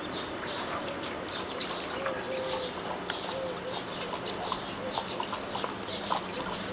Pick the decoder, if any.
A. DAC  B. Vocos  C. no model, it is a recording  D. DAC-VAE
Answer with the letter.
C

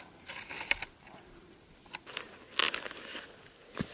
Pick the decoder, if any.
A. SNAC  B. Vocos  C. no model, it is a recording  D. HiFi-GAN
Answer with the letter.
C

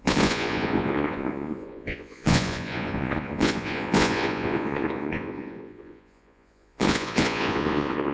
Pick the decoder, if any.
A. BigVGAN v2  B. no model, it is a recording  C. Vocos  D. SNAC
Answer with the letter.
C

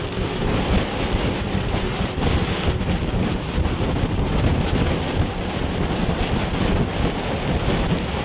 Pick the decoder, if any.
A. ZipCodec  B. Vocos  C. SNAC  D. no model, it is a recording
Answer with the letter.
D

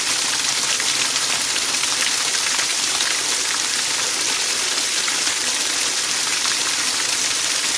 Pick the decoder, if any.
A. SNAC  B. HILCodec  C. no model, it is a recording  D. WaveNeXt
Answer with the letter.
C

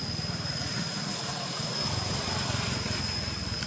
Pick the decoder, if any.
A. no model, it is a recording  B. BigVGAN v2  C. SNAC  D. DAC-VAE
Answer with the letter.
A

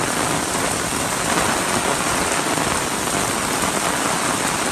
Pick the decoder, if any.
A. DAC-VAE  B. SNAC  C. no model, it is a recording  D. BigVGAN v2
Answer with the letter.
C